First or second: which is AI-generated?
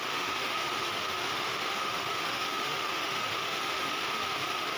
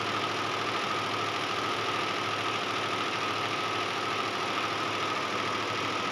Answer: first